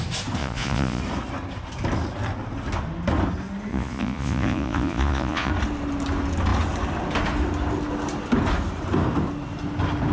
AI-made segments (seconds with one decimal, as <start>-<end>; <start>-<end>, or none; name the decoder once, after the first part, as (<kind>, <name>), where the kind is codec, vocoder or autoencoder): 0.4-1.0 (vocoder, Vocos); 3.7-5.5